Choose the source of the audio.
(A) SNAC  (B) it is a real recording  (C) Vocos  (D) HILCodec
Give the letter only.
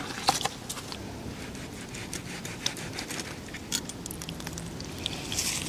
B